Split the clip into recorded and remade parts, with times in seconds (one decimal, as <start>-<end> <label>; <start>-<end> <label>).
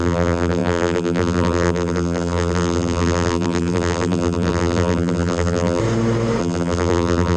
0.0-5.8 remade; 5.8-6.4 recorded; 6.4-7.4 remade